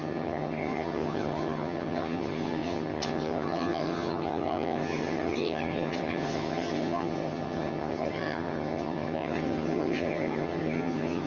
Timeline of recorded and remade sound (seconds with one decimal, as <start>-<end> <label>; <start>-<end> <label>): 0.0-11.3 remade